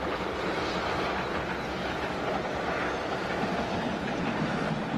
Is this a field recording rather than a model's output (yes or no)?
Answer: yes